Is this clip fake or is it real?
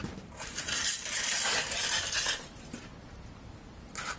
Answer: fake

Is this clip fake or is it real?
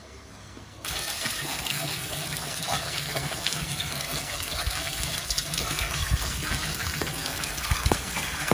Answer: fake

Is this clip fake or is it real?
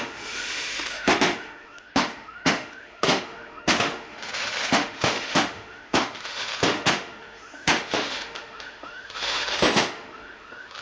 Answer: fake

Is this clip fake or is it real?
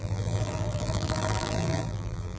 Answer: fake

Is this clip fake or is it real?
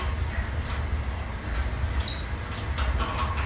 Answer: real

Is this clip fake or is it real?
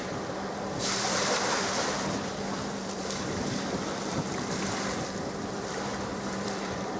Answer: fake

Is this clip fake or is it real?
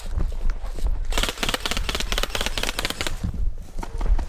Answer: real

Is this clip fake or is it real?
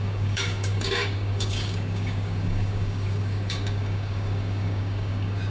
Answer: fake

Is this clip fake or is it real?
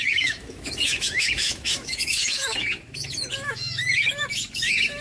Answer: fake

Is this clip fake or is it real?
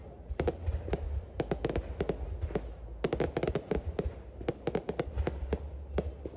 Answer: real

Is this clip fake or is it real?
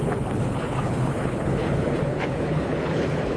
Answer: fake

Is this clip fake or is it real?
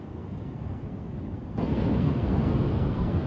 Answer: fake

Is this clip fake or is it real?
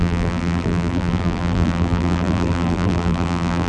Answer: fake